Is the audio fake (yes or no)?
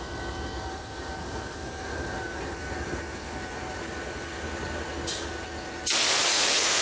no